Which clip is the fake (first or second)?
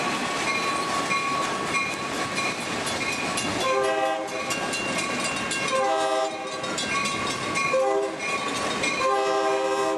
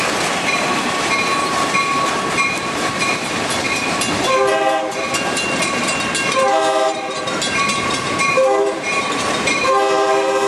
second